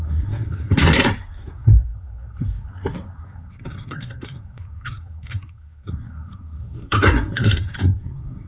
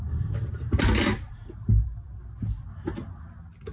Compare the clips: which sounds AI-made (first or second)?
first